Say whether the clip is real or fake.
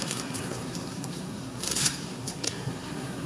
fake